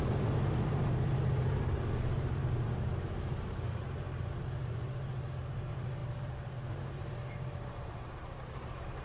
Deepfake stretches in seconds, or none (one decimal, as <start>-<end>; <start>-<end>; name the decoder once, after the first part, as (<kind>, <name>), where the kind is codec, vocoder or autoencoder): 0.0-9.0 (vocoder, BigVGAN v2)